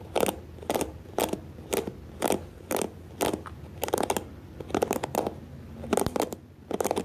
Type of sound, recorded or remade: recorded